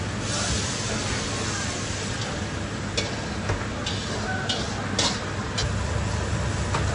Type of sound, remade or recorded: recorded